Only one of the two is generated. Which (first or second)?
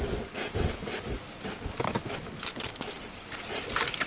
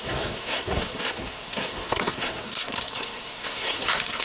second